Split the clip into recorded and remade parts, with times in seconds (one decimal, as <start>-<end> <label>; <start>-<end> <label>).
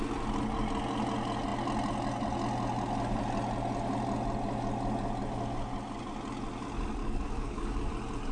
0.0-7.0 recorded; 7.0-7.9 remade; 7.9-8.3 recorded